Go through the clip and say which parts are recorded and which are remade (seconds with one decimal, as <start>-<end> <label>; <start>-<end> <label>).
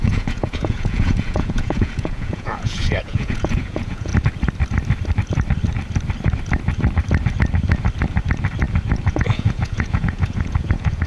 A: 0.0-4.1 remade; 4.1-9.1 recorded; 9.1-11.1 remade